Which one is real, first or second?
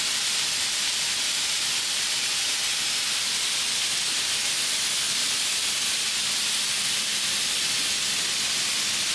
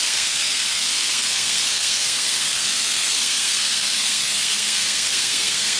first